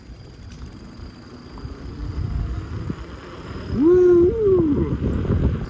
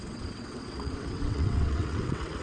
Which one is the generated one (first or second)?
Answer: second